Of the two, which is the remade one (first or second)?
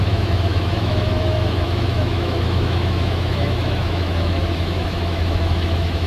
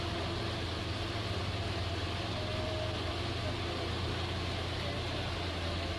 first